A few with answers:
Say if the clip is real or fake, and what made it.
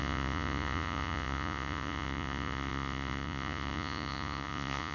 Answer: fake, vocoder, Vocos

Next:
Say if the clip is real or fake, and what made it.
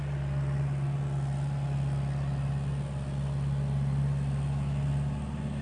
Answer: real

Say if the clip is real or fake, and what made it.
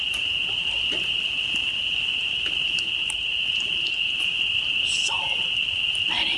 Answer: real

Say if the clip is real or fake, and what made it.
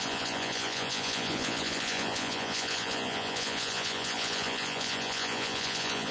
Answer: fake, vocoder, Vocos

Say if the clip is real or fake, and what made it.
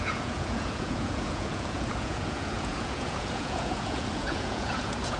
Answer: fake, vocoder, Vocos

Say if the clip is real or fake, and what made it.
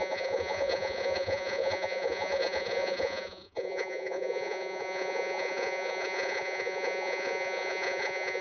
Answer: fake, vocoder, Vocos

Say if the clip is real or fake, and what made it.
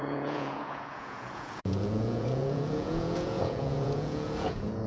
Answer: fake, vocoder, Vocos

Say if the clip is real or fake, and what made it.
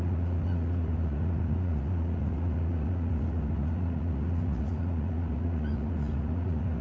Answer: fake, vocoder, Vocos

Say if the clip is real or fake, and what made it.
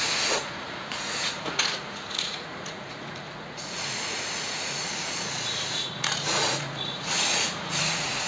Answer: fake, vocoder, Vocos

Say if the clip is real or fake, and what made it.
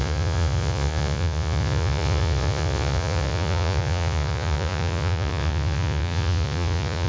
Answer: fake, vocoder, Vocos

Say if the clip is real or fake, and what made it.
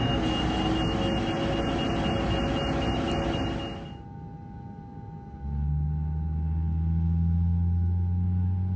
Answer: real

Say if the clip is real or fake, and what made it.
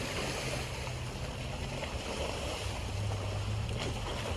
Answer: real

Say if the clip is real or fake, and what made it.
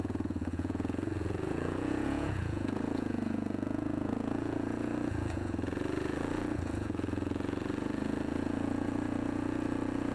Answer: fake, vocoder, Vocos